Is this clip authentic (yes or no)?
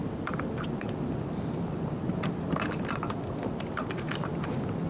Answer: yes